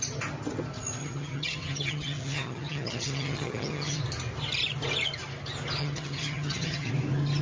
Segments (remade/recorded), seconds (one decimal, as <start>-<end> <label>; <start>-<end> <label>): 0.0-1.0 recorded; 1.0-4.0 remade; 4.0-5.8 recorded; 5.8-6.9 remade; 6.9-7.4 recorded